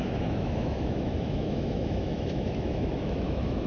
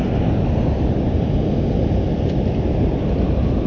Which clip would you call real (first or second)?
second